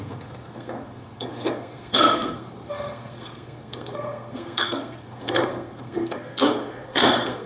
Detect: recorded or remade remade